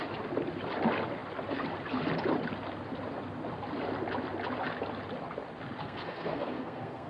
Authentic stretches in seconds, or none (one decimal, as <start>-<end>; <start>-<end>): 0.0-5.8